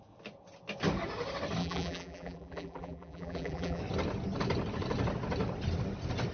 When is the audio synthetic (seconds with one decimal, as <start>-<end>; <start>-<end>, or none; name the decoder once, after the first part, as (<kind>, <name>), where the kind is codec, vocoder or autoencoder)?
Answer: 1.6-3.8 (vocoder, BigVGAN v2)